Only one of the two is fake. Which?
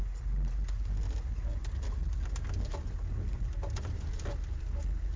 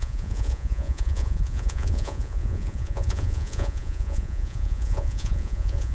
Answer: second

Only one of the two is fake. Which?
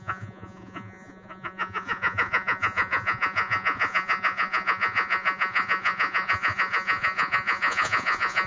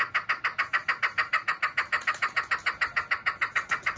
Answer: first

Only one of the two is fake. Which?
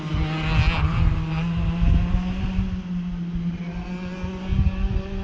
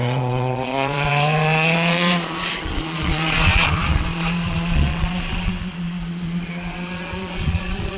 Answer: second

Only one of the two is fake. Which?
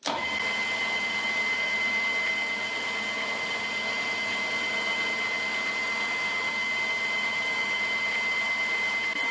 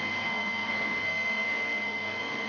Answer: second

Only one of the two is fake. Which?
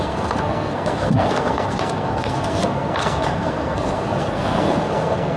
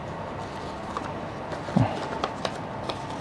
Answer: first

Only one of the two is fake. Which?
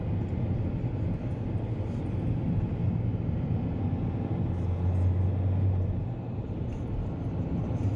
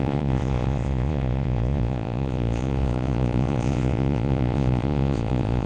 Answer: second